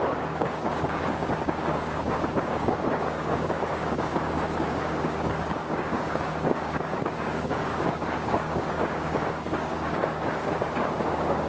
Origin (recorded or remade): remade